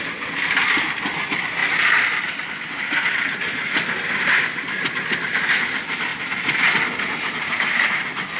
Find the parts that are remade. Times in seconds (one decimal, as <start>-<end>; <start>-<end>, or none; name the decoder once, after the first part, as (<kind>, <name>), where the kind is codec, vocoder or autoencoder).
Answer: none